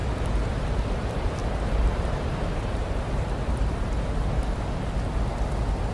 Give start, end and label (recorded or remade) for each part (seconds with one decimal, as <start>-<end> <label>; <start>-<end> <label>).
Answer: 0.0-1.4 recorded; 1.4-4.0 remade; 4.0-5.9 recorded